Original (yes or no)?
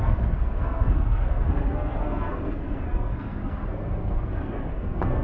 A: no